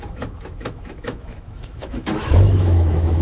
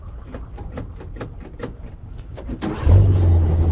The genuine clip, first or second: second